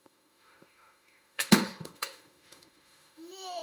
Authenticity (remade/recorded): remade